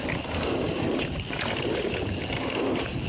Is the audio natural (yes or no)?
yes